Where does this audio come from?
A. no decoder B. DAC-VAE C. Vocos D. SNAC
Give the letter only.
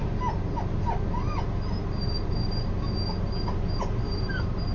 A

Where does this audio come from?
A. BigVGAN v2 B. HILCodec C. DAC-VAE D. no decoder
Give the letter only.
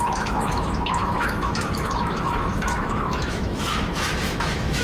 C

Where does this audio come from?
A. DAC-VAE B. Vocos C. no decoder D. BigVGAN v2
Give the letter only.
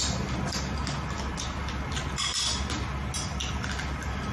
C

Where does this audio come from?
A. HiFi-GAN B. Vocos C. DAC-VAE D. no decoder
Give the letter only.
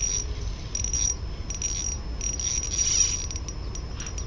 D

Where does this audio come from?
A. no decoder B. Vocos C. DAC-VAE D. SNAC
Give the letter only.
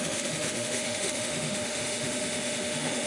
C